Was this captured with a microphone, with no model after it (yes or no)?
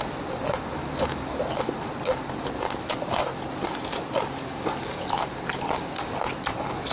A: yes